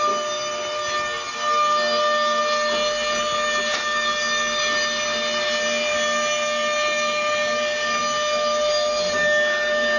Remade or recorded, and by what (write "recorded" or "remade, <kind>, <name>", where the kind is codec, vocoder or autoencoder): recorded